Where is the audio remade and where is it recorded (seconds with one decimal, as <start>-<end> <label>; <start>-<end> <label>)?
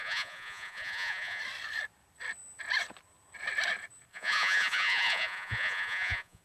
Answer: 0.0-1.4 remade; 1.4-4.1 recorded; 4.1-6.4 remade